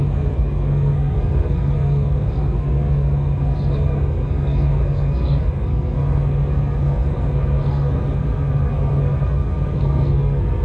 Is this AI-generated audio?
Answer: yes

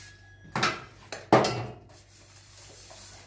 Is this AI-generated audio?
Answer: no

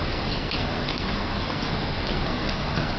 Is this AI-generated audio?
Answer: yes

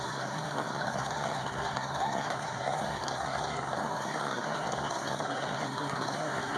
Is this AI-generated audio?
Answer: yes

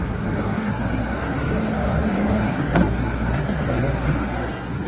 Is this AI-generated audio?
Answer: yes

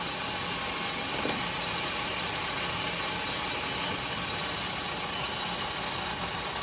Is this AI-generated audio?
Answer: no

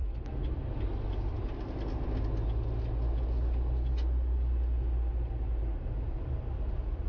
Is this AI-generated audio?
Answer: no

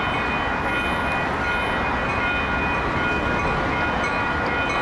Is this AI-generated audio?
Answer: no